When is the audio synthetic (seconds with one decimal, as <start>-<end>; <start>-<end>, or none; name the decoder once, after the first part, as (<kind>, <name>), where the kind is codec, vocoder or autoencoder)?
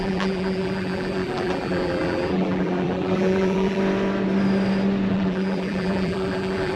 0.0-3.8 (vocoder, BigVGAN v2); 5.1-6.8